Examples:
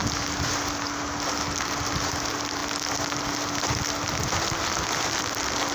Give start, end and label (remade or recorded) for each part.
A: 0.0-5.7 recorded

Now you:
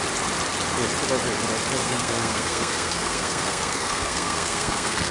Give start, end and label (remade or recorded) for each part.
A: 0.0-1.8 recorded; 1.8-5.1 remade

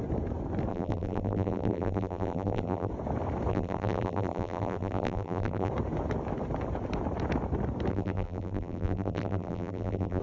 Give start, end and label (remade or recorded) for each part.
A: 0.0-0.7 recorded; 0.7-2.9 remade; 2.9-3.5 recorded; 3.5-5.7 remade; 5.7-7.9 recorded; 7.9-10.2 remade

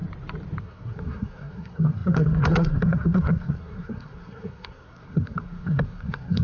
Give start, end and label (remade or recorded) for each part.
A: 0.0-0.6 recorded; 0.6-6.4 remade

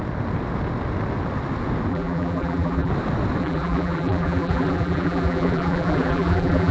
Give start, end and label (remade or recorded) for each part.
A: 0.0-1.9 recorded; 1.9-2.9 remade; 2.9-3.4 recorded; 3.4-6.7 remade

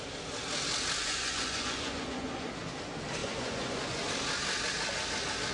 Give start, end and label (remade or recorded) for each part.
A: 0.0-1.0 recorded; 1.0-2.5 remade; 2.5-3.2 recorded; 3.2-4.0 remade; 4.0-5.5 recorded

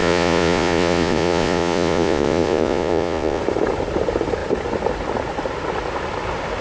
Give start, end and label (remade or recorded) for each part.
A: 0.0-3.4 remade; 3.4-6.6 recorded